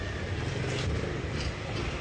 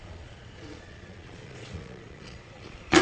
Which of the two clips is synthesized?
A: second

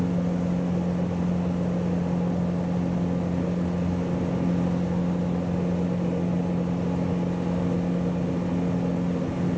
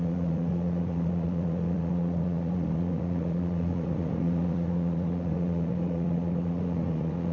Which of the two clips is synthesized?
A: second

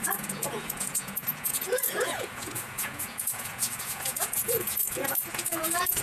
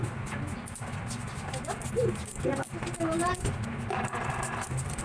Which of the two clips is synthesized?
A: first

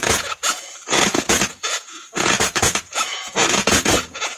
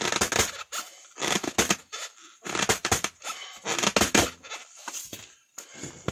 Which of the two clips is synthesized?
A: first